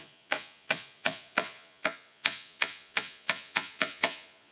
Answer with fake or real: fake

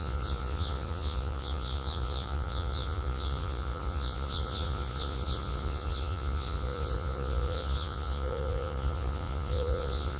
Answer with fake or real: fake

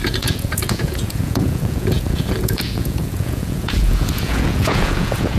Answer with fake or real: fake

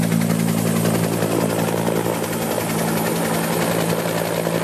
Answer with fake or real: real